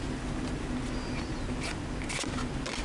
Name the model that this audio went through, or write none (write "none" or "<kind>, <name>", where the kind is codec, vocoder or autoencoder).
none